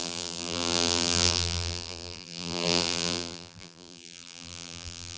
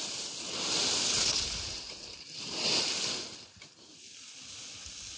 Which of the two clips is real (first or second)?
second